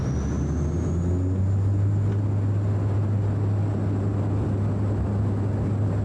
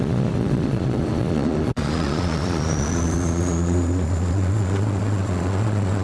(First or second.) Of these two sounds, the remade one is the second